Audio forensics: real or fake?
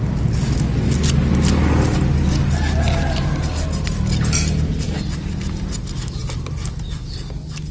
real